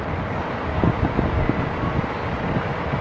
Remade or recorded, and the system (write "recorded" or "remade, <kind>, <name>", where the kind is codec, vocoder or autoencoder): recorded